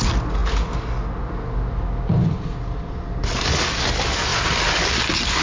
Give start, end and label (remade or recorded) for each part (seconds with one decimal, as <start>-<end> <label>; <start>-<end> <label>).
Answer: 0.0-5.4 recorded